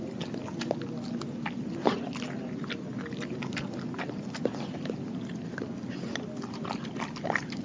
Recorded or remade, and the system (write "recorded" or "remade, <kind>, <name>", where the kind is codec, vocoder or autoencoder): recorded